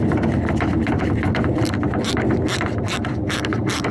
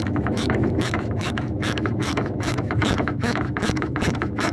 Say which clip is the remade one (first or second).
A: second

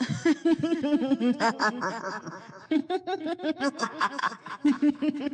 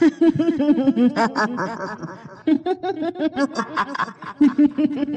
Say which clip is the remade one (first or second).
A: first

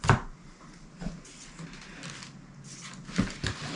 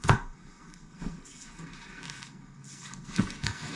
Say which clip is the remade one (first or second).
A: second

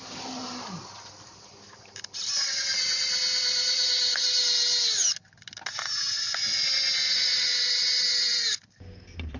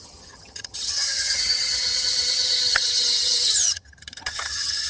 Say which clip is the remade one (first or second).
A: second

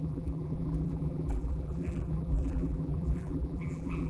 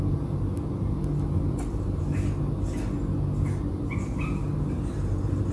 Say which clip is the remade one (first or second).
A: first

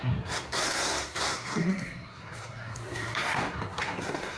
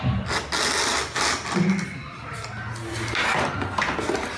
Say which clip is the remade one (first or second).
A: first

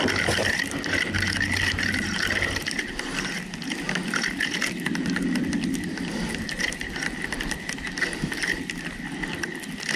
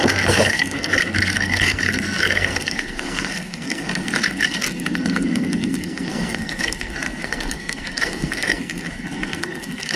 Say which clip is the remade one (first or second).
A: second